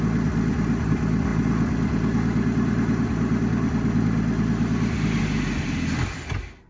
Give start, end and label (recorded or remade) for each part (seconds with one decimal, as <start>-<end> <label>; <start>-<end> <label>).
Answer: 0.0-6.7 recorded